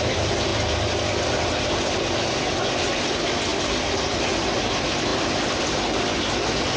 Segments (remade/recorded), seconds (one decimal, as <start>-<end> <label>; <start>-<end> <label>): 0.0-6.8 recorded